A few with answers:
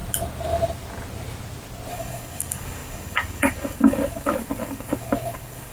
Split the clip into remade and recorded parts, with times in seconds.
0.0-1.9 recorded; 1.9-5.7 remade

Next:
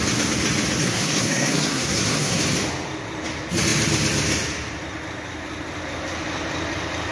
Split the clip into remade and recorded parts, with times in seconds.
0.0-0.8 recorded; 0.8-2.4 remade; 2.4-7.1 recorded

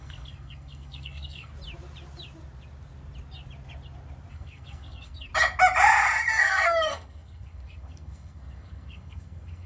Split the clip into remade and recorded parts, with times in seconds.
0.0-1.5 remade; 1.5-4.3 recorded; 4.3-5.3 remade; 5.3-6.4 recorded; 6.4-9.7 remade